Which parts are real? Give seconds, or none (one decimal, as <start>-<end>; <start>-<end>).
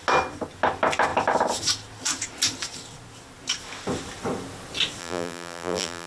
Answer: 0.0-5.0